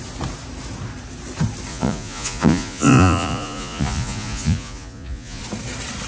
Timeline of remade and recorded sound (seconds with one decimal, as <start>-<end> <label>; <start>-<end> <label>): 0.0-1.7 recorded; 1.7-5.4 remade; 5.4-6.1 recorded